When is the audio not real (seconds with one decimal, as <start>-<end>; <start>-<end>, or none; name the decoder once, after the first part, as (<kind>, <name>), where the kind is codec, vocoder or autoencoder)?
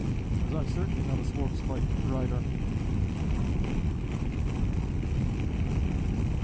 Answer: none